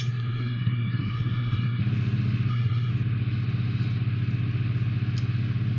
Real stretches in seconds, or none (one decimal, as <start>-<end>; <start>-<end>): 1.8-2.5; 2.9-5.8